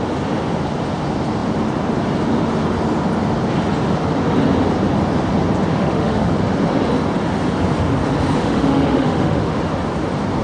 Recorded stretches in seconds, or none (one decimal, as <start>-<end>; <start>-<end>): 0.0-5.7; 6.3-8.4; 9.6-10.4